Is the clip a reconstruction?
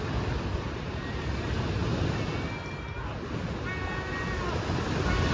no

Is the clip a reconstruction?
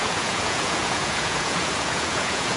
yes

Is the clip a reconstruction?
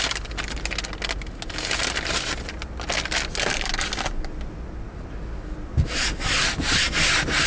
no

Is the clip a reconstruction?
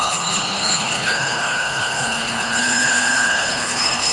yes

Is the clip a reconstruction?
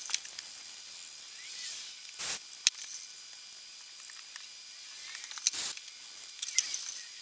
no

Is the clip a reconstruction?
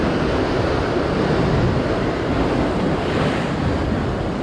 no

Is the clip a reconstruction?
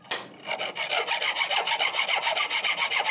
no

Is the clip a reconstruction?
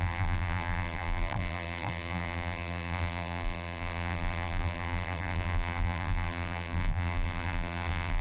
yes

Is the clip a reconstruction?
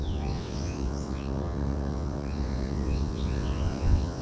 yes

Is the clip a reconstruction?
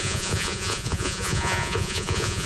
yes